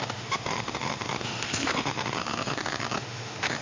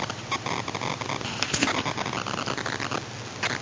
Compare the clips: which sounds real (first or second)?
second